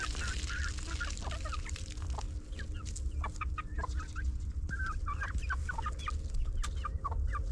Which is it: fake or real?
real